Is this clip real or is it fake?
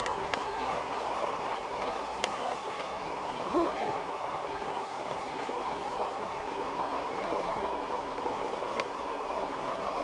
fake